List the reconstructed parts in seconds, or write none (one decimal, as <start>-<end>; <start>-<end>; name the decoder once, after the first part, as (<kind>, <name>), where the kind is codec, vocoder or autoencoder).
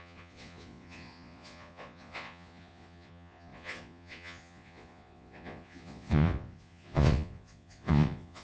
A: 0.0-8.4 (vocoder, Vocos)